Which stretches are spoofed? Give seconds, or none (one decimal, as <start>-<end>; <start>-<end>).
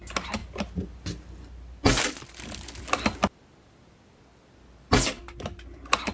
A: none